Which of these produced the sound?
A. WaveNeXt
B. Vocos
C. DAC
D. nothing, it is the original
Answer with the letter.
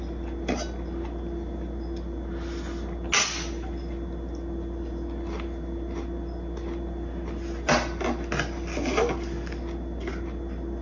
D